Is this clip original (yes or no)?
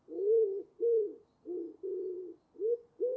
yes